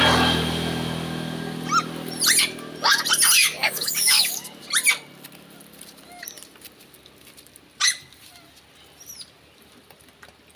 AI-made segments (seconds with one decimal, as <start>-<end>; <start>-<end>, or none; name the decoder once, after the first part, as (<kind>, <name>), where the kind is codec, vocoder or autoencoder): 3.4-4.6 (codec, DAC)